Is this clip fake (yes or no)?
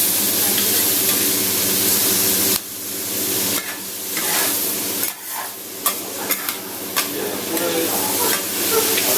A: no